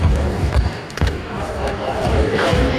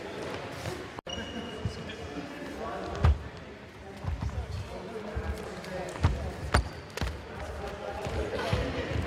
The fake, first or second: first